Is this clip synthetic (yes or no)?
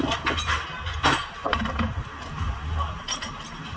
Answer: no